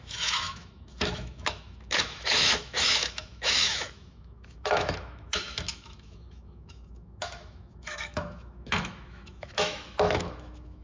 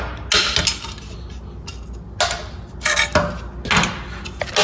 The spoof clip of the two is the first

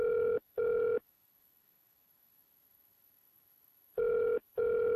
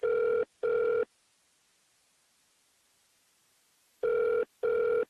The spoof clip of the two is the first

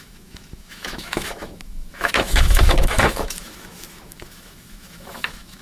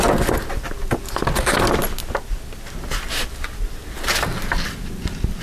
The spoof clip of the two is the first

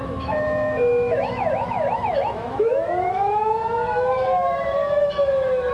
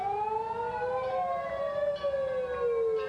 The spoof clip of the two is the first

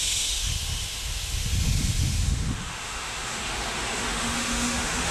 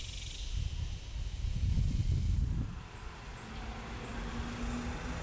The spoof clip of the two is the first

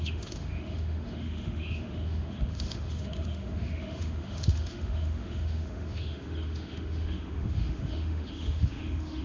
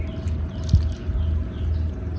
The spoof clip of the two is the first